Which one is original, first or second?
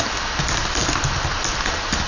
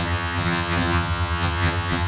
first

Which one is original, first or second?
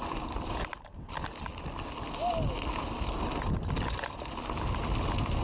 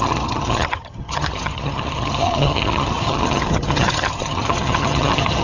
first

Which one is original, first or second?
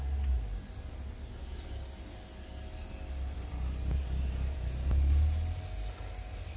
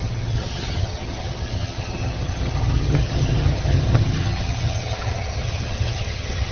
first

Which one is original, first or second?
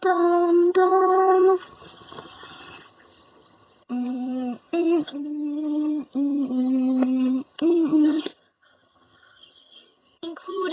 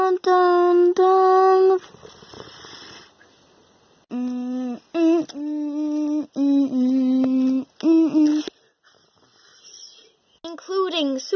second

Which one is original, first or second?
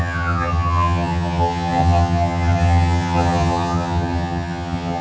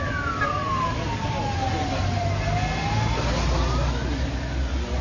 second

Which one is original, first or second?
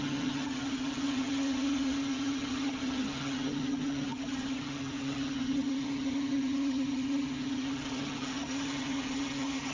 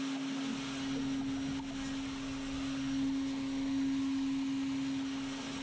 second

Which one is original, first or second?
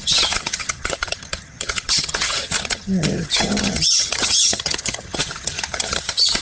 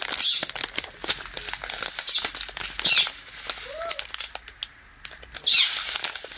second